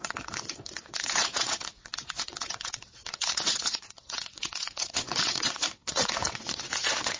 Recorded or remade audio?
remade